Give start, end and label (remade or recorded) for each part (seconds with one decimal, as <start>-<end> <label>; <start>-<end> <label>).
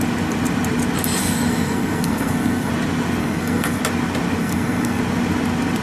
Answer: 0.0-1.2 recorded; 1.2-2.7 remade; 2.7-3.2 recorded; 3.2-3.8 remade; 3.8-4.4 recorded; 4.4-5.0 remade; 5.0-5.8 recorded